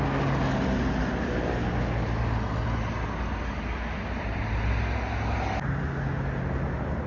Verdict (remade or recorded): recorded